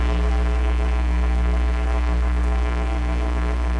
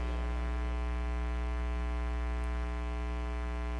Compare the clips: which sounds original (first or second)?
second